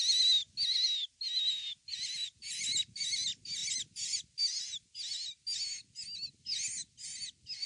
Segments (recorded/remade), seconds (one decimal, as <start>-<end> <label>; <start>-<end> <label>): 0.0-7.7 recorded